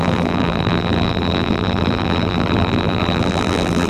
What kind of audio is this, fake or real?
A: fake